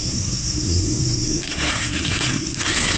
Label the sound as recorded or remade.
remade